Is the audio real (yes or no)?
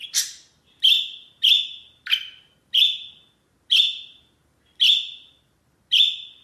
yes